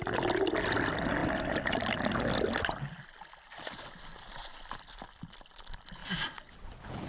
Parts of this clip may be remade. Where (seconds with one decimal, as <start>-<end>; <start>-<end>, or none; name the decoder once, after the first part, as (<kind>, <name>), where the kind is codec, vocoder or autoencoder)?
none